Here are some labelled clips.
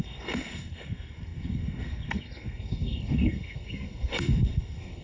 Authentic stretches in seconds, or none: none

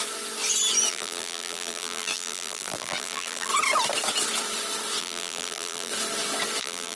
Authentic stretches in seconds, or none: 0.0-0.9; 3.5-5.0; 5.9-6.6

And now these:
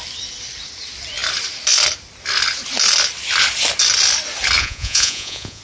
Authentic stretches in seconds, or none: 0.0-4.6

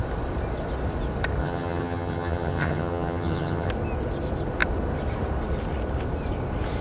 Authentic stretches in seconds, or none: 0.0-1.4; 3.7-6.8

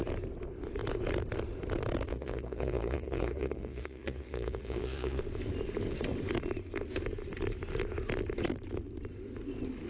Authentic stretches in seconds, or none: 0.0-2.1; 5.2-9.9